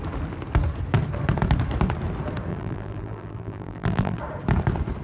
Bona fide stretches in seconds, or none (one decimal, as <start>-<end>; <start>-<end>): 0.0-2.5; 4.2-5.0